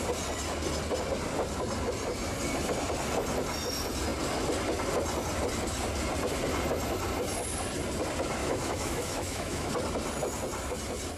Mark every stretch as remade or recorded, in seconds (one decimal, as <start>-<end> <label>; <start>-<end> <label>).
0.0-8.4 recorded; 8.4-9.7 remade; 9.7-11.2 recorded